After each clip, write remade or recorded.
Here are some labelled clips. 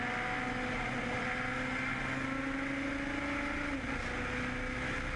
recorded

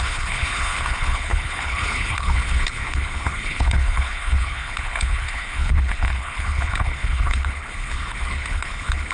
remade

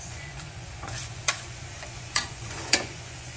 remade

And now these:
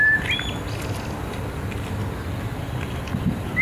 recorded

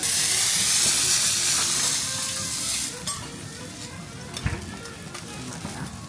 recorded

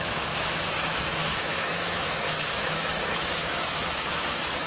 remade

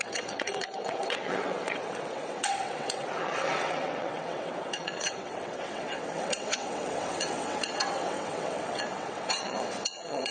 remade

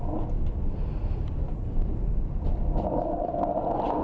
recorded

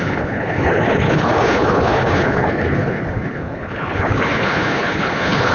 remade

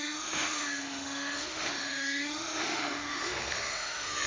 remade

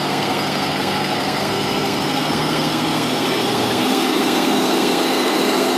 remade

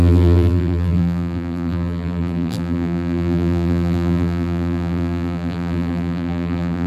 remade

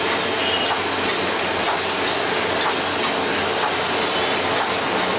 recorded